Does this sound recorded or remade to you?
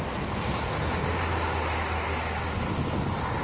recorded